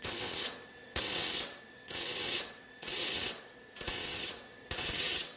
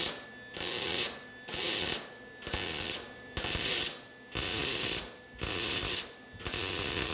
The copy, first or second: first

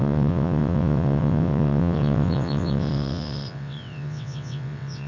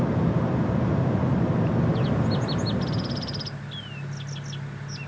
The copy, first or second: first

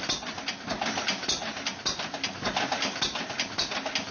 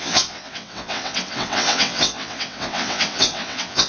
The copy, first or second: second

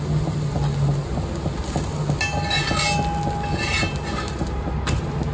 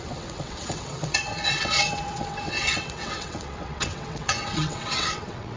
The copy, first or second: second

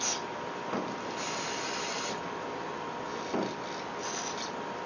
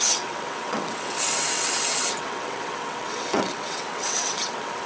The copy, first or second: second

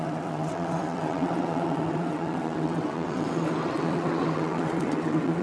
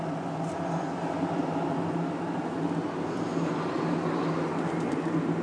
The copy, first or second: first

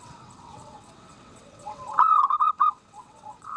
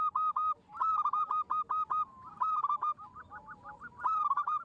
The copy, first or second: first